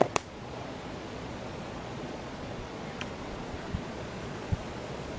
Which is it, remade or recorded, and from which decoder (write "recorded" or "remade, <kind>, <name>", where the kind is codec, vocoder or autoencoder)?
remade, vocoder, Vocos